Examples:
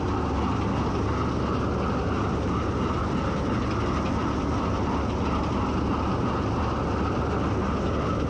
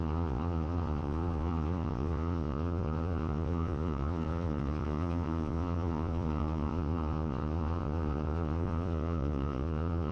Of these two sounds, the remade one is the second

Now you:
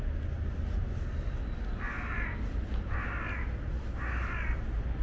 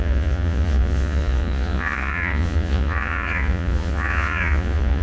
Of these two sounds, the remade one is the second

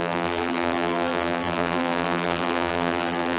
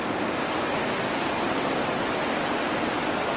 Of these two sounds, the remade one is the first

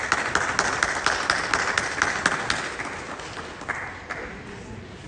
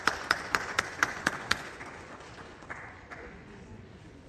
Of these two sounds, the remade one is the second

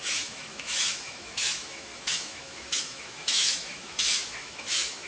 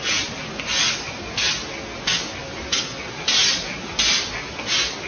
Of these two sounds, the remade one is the first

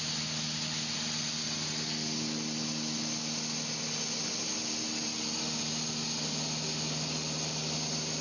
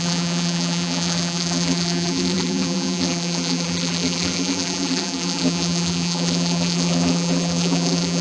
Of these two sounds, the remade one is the second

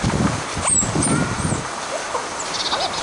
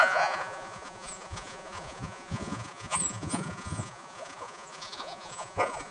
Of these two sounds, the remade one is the second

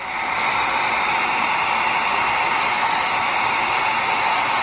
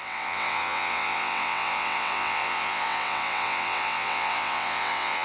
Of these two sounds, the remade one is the second